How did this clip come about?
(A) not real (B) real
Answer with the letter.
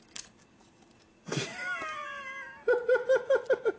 B